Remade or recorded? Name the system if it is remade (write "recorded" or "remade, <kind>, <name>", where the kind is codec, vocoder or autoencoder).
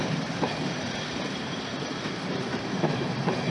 remade, vocoder, BigVGAN v2